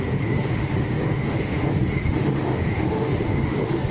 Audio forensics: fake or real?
fake